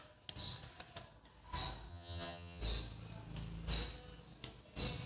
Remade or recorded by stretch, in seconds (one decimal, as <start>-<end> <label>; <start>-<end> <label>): 0.0-1.9 recorded; 1.9-2.6 remade; 2.6-5.1 recorded